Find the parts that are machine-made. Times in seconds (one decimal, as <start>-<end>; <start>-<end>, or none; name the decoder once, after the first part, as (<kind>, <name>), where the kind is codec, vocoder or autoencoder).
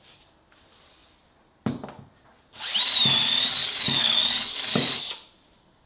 3.6-5.0 (codec, DAC)